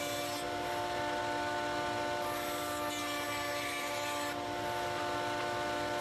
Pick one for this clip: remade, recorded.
recorded